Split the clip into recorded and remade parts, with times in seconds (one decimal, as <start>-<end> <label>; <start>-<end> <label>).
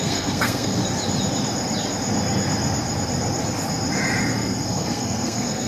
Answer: 0.0-0.8 remade; 0.8-4.2 recorded; 4.2-5.7 remade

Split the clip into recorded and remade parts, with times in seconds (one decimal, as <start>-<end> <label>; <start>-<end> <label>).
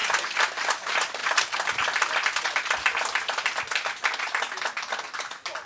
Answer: 0.0-5.7 recorded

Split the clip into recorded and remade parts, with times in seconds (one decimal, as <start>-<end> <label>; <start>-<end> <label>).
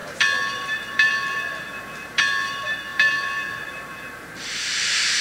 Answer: 0.0-5.2 remade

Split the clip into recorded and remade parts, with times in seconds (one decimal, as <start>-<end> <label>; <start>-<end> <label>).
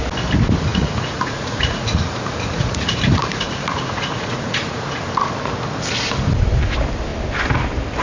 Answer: 0.0-0.7 recorded; 0.7-5.0 remade; 5.0-8.0 recorded